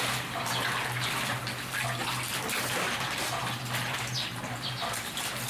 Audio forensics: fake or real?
real